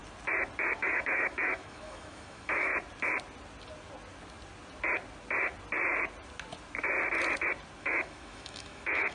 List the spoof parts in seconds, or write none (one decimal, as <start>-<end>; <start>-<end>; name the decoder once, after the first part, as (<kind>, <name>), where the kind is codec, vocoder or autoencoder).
0.8-2.7 (autoencoder, DAC-VAE); 7.8-9.1